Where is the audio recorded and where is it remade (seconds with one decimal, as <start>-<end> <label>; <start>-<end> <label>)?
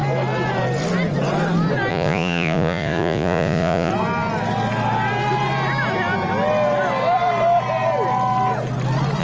0.0-1.9 recorded; 1.9-3.9 remade; 3.9-9.2 recorded